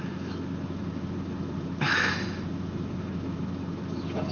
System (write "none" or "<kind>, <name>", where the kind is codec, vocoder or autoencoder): autoencoder, DAC-VAE